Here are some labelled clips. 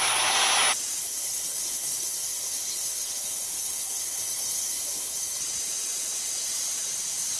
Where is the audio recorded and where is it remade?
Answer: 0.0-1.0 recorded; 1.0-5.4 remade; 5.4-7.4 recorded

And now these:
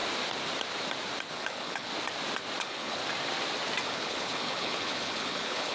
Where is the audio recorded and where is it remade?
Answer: 0.0-1.3 recorded; 1.3-1.9 remade; 1.9-2.6 recorded; 2.6-3.0 remade; 3.0-3.8 recorded; 3.8-5.7 remade